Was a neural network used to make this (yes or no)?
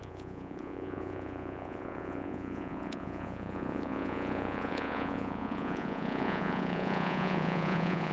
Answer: yes